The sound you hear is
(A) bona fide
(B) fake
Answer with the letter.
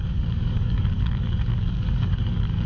B